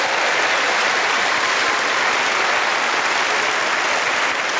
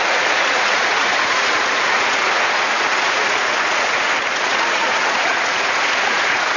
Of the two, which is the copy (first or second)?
second